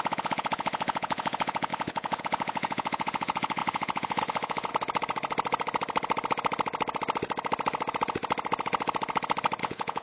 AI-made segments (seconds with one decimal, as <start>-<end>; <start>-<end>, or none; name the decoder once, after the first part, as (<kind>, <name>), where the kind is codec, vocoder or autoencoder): 0.0-4.7 (vocoder, Vocos); 9.6-10.0